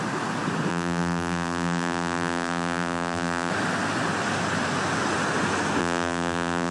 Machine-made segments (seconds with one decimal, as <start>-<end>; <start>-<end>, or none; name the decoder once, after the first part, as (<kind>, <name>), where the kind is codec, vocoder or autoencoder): 0.7-3.5 (vocoder, BigVGAN v2); 5.8-6.7